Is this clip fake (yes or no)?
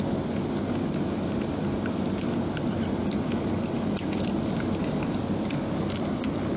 no